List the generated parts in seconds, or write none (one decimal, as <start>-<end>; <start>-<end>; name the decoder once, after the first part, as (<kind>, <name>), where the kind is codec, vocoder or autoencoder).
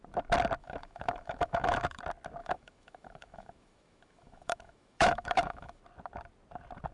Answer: 0.6-2.0 (autoencoder, DAC-VAE); 2.4-5.8